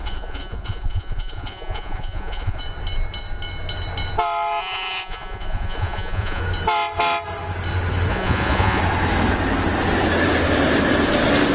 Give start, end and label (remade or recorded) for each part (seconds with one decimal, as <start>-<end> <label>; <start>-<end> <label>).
0.0-2.6 remade; 2.6-4.6 recorded; 4.6-6.4 remade; 6.4-8.1 recorded; 8.1-8.8 remade; 8.8-11.5 recorded